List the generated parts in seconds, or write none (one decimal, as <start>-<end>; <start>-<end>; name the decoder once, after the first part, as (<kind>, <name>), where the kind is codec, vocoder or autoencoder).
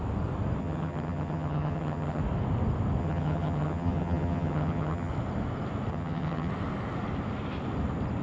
0.6-2.2 (vocoder, HiFi-GAN); 3.0-5.1; 5.9-6.5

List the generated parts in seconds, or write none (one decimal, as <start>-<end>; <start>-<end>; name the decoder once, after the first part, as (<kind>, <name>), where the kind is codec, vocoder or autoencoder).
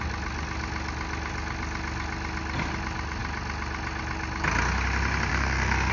5.3-5.9 (codec, SNAC)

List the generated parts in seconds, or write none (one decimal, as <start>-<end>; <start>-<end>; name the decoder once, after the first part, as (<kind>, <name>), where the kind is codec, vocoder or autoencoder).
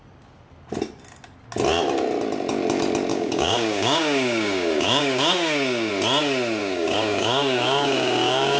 3.1-5.9 (codec, DAC); 6.6-8.6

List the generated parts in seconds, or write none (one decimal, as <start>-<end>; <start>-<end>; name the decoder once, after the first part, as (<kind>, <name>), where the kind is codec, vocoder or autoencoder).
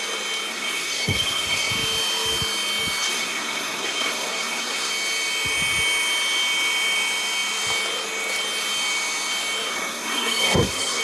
0.5-1.7 (codec, SNAC); 3.1-4.9; 9.7-11.0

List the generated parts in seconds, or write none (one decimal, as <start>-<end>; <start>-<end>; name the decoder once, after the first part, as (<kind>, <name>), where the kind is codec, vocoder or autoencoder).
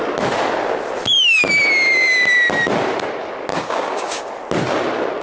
3.5-4.3 (codec, DAC)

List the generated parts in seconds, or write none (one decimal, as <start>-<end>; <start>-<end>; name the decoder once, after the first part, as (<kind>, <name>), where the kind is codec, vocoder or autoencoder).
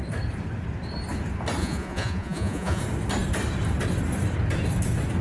1.6-2.8 (vocoder, Vocos)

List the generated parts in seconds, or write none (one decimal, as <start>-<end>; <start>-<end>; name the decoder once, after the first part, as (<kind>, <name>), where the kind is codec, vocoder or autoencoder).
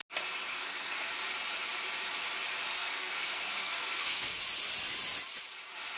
0.5-1.1 (codec, SNAC); 2.7-4.4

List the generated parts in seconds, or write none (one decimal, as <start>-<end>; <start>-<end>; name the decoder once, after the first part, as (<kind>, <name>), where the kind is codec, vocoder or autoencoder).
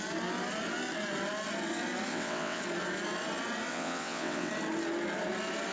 2.1-2.6 (vocoder, WaveNeXt); 3.7-4.5